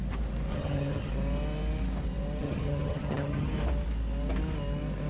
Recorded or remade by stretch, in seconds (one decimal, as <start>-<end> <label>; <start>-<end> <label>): 0.0-0.5 recorded; 0.5-1.1 remade; 1.1-2.4 recorded; 2.4-3.5 remade; 3.5-5.1 recorded